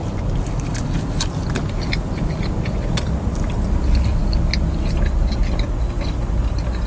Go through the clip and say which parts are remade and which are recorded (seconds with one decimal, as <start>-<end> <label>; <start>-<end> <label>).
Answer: 0.0-3.8 remade; 3.8-6.9 recorded